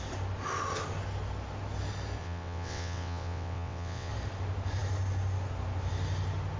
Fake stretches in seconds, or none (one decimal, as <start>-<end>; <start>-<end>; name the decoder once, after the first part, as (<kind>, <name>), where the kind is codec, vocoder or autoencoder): 2.2-4.1 (vocoder, WaveNeXt)